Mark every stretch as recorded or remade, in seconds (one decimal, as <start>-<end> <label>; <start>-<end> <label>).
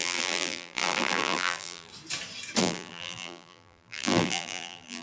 0.0-1.9 remade; 1.9-2.6 recorded; 2.6-5.0 remade